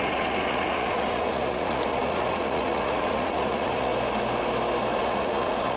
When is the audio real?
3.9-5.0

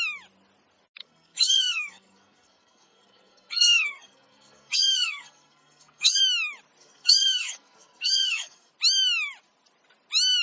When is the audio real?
0.0-1.0; 6.2-6.8; 8.7-10.4

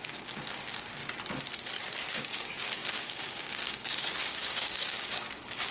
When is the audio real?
1.0-2.1

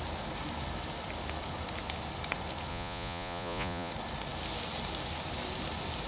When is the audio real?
0.0-2.7; 3.9-6.1